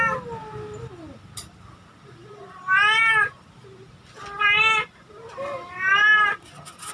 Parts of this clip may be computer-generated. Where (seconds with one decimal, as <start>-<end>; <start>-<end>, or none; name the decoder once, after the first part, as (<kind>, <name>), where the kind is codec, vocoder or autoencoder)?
none